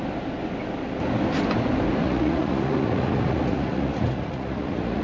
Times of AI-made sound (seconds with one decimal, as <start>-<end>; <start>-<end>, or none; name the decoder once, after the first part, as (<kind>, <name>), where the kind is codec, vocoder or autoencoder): 2.0-5.0 (vocoder, Vocos)